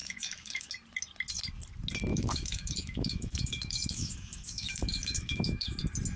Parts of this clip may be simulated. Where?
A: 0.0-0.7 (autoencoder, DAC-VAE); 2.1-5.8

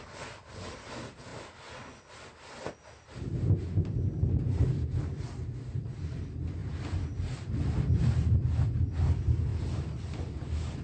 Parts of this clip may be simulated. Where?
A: none